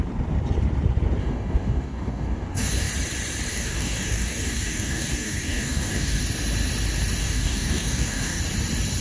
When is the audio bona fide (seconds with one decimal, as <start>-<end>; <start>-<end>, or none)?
0.0-1.2; 2.9-3.5; 6.2-7.2; 8.4-9.0